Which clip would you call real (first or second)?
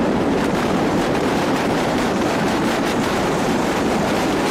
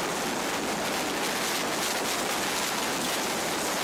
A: second